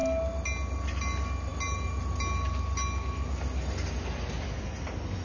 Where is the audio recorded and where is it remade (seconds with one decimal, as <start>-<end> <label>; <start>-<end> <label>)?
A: 0.0-5.2 recorded